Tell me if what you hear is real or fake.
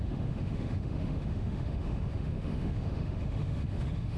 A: fake